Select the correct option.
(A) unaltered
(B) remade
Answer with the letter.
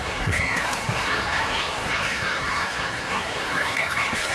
B